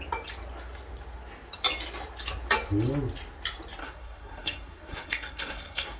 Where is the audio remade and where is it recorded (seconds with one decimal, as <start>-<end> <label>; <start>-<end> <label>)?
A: 0.0-3.8 recorded; 3.8-6.0 remade